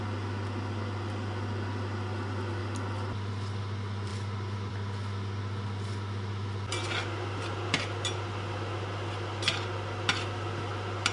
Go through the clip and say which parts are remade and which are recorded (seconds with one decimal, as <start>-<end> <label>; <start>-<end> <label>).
0.0-11.1 recorded